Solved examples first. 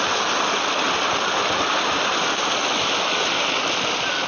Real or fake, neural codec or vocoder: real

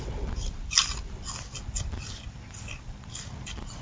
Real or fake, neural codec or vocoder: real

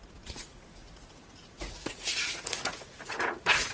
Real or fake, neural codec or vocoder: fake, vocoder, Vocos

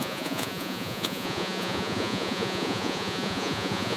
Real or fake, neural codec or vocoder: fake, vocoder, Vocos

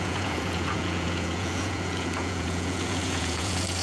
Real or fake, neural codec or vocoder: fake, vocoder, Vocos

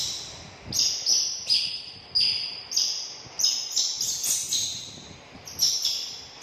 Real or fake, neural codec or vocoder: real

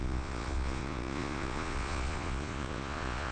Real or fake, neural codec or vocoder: fake, vocoder, Vocos